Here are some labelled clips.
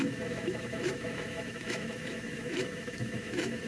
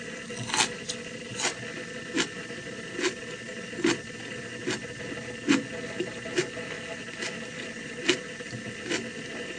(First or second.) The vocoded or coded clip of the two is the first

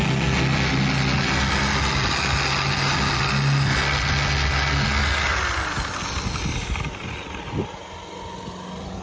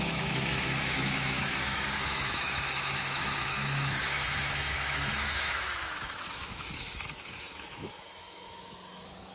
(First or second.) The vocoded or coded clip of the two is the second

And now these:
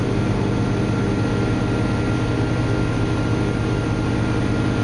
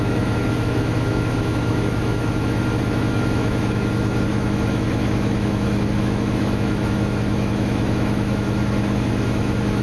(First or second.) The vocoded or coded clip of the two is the second